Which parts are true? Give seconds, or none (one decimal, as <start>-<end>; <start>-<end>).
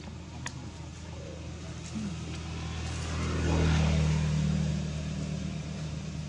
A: 0.0-6.3